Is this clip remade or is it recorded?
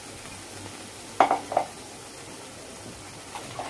recorded